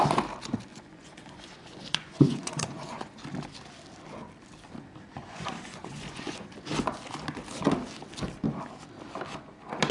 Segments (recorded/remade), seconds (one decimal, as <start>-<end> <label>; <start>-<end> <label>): 0.0-0.7 recorded; 0.7-3.1 remade; 3.1-5.2 recorded; 5.2-6.7 remade; 6.7-9.9 recorded